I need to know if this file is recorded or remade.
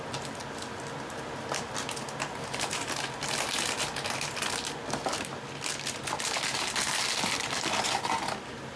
recorded